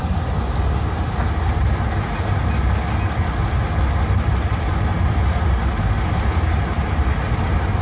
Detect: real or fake real